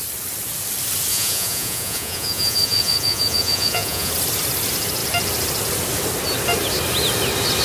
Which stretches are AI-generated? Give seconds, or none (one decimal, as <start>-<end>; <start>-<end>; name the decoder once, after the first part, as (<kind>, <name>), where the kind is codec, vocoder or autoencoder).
1.1-4.1 (vocoder, Vocos)